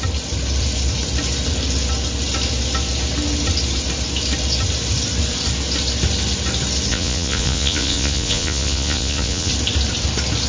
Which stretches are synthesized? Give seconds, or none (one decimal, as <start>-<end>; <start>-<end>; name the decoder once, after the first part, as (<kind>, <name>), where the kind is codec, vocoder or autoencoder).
6.9-9.5 (vocoder, Vocos)